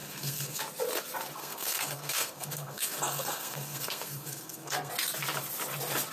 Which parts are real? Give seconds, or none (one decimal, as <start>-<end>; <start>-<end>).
0.6-1.4; 4.9-6.1